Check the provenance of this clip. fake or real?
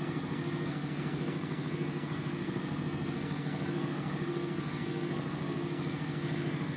fake